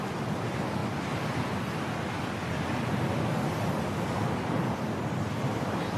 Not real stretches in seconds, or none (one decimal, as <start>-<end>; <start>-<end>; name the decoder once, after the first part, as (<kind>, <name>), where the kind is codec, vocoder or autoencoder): none